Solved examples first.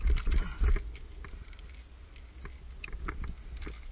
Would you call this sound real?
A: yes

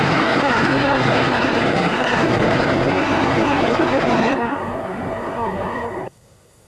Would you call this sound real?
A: no